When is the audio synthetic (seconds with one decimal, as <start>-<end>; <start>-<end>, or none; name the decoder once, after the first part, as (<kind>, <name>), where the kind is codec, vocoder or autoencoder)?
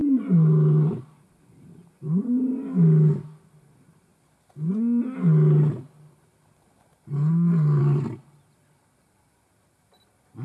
none